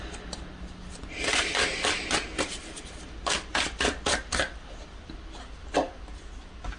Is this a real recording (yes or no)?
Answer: yes